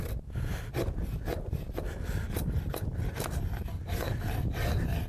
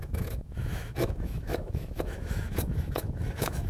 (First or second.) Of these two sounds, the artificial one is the second